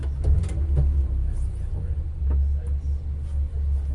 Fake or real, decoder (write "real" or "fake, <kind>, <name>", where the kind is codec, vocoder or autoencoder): real